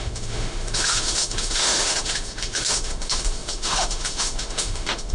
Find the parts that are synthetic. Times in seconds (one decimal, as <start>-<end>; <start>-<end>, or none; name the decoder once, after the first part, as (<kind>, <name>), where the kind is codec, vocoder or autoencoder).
0.0-5.1 (autoencoder, DAC-VAE)